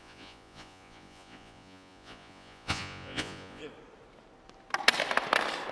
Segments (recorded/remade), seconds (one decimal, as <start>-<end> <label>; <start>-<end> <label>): 0.0-3.6 remade; 3.6-5.7 recorded